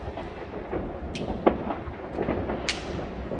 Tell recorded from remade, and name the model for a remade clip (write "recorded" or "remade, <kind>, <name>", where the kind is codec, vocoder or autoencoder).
recorded